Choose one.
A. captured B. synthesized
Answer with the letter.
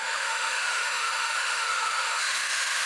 B